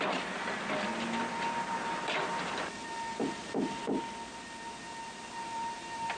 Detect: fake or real real